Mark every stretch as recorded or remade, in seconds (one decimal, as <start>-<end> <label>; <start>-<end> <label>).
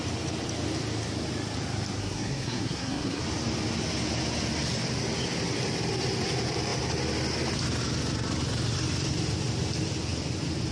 0.0-2.0 recorded; 2.0-3.2 remade; 3.2-10.7 recorded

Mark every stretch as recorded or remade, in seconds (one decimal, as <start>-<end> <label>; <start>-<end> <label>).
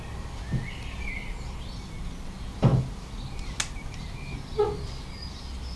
0.0-5.8 recorded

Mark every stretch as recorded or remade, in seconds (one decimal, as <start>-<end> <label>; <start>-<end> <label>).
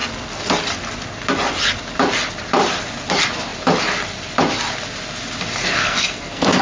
0.0-5.6 recorded; 5.6-6.6 remade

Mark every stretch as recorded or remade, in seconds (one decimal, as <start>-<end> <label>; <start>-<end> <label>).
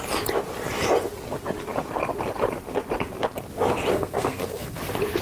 0.0-3.9 recorded; 3.9-4.8 remade; 4.8-5.2 recorded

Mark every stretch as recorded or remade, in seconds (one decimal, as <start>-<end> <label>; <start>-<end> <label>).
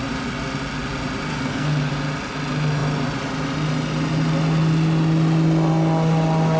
0.0-1.3 recorded; 1.3-1.9 remade; 1.9-6.6 recorded